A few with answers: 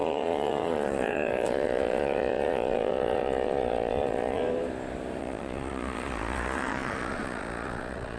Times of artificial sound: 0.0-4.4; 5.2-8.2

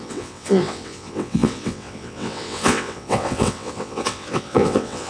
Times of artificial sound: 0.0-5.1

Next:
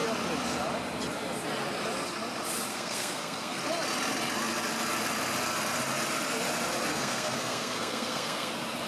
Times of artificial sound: 2.7-3.6; 6.9-8.5